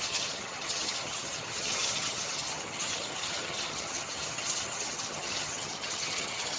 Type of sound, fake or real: fake